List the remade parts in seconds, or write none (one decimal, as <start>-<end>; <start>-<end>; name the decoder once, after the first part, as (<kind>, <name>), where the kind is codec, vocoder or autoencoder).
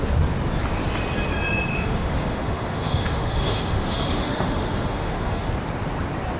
1.7-5.5 (autoencoder, DAC-VAE)